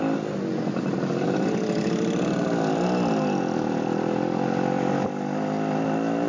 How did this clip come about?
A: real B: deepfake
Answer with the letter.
A